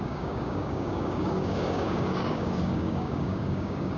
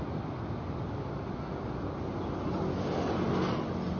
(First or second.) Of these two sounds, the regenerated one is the first